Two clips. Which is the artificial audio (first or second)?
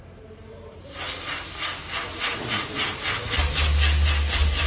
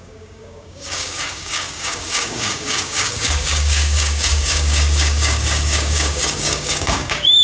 second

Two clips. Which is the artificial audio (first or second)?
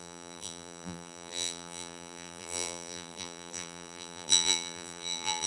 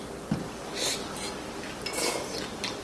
first